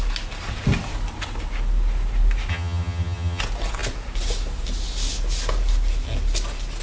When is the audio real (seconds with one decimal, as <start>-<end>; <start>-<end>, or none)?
0.0-2.5; 3.4-6.8